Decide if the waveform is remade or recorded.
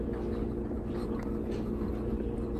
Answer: recorded